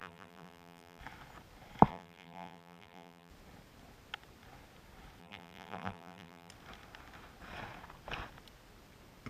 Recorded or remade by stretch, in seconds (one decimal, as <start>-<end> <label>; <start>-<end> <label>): 0.0-1.0 remade; 1.0-1.9 recorded; 1.9-3.3 remade; 3.3-5.2 recorded; 5.2-6.5 remade; 6.5-9.3 recorded